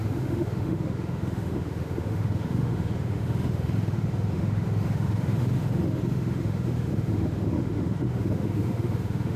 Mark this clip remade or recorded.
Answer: remade